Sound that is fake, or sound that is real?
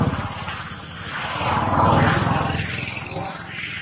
real